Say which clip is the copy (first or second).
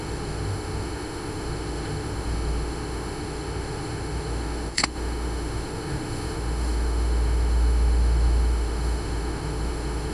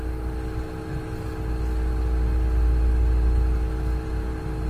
first